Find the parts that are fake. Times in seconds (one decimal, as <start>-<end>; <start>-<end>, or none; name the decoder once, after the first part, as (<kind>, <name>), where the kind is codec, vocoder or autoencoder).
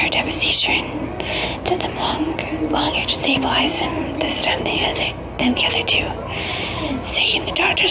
none